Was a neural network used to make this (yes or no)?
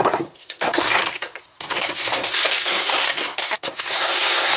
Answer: yes